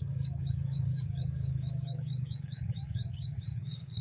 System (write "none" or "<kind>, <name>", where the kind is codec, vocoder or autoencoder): codec, DAC